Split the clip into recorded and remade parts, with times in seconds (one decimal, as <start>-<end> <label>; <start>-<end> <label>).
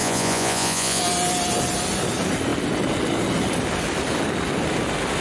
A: 0.0-1.0 remade; 1.0-5.2 recorded